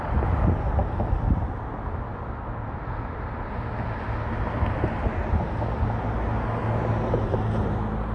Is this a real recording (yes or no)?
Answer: yes